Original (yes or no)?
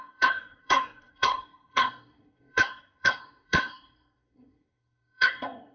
no